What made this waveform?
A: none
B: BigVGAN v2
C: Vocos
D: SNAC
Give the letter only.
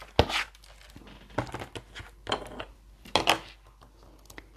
A